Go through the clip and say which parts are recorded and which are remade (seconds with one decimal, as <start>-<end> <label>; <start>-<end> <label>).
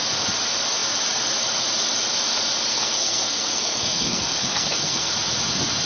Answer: 0.0-2.7 recorded; 2.7-5.1 remade; 5.1-5.9 recorded